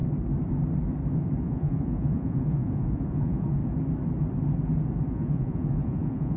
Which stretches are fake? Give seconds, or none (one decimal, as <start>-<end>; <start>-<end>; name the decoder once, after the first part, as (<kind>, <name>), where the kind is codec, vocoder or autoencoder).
1.4-3.6 (vocoder, Vocos); 5.1-6.4